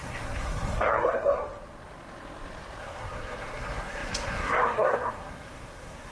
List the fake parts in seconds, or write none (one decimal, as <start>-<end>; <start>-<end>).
0.0-1.4; 2.8-6.1